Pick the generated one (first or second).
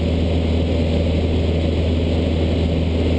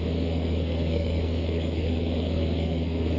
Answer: second